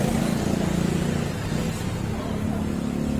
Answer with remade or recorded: recorded